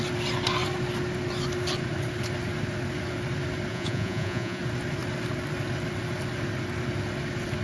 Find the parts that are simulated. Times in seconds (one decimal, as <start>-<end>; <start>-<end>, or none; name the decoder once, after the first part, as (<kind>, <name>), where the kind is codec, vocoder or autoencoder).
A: 3.7-4.6 (vocoder, Vocos)